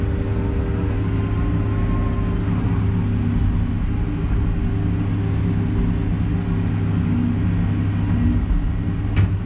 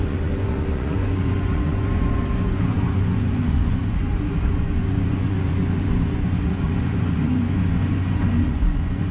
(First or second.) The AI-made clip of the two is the second